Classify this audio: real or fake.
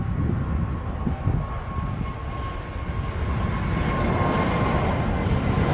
real